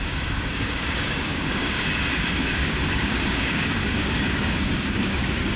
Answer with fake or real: fake